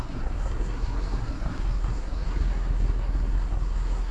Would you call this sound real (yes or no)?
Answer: no